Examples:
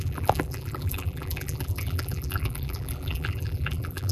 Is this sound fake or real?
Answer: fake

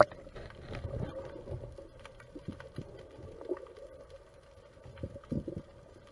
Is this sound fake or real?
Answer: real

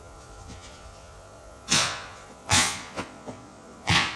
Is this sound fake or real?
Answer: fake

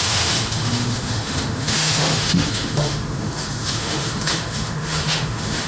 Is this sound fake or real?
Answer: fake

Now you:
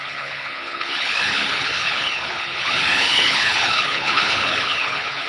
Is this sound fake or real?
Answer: fake